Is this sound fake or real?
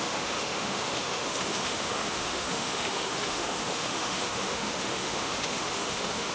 fake